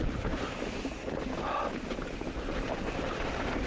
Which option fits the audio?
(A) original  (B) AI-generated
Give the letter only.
A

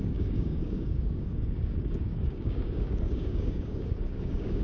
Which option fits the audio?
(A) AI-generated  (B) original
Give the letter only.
A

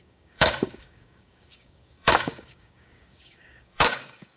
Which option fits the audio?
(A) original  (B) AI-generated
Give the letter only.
B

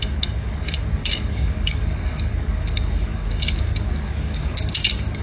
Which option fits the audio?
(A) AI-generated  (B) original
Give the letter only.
A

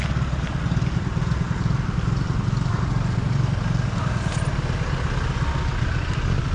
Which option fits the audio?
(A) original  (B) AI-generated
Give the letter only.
A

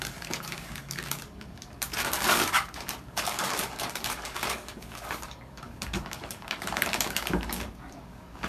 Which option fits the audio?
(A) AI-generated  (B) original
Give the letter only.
A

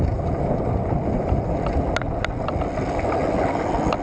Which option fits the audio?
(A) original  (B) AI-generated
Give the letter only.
A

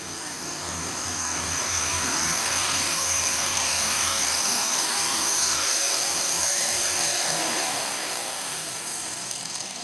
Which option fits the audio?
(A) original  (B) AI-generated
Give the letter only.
B